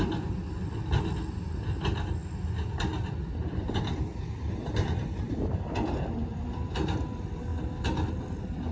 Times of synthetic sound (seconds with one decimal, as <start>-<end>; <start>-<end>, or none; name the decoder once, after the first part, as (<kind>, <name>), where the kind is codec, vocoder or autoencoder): none